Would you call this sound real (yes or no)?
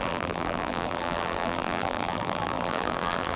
no